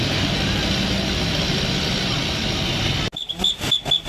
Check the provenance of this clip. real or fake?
real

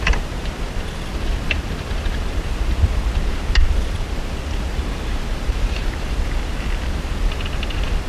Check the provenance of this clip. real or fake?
fake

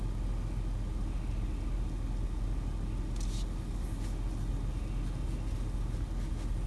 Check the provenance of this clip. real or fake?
real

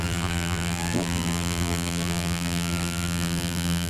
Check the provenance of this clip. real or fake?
fake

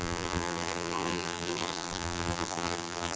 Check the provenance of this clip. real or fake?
fake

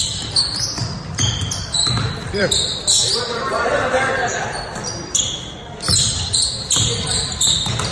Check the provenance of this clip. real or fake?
fake